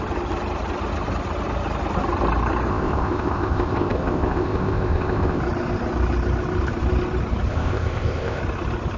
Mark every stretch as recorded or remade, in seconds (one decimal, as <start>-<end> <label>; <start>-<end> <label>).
0.0-2.7 recorded; 2.7-5.4 remade; 5.4-7.5 recorded; 7.5-8.4 remade; 8.4-9.0 recorded